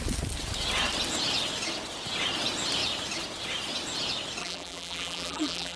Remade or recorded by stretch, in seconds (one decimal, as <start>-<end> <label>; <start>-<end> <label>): 0.0-4.4 recorded; 4.4-5.8 remade